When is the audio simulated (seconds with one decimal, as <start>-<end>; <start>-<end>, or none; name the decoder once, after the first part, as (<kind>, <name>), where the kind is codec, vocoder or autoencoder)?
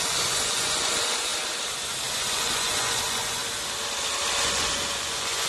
0.0-1.3 (vocoder, Vocos); 2.1-3.4; 4.4-5.5